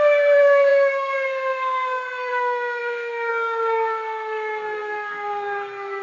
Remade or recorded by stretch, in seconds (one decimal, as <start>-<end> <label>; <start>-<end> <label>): 0.0-6.0 remade